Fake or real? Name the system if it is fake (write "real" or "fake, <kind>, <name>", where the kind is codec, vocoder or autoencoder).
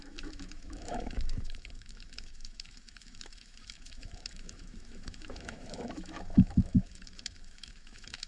fake, autoencoder, DAC-VAE